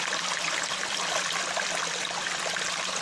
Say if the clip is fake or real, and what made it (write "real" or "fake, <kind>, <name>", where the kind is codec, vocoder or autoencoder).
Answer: real